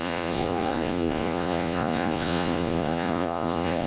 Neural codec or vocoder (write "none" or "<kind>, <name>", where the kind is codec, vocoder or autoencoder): vocoder, Vocos